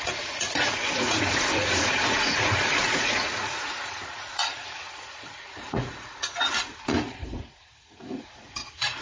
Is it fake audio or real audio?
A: fake